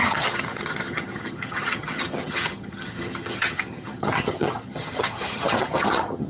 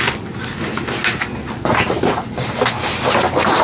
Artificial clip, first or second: first